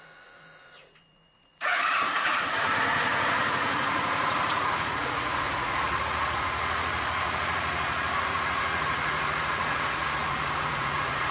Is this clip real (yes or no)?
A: no